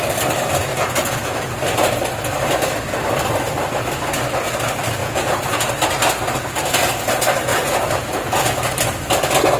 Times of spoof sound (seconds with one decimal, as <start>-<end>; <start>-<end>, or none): 0.7-1.5; 5.0-5.7; 7.5-8.5